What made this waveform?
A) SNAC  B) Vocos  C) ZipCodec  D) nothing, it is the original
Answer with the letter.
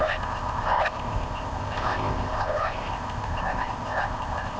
C